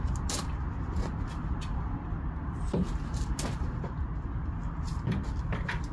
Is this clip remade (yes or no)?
no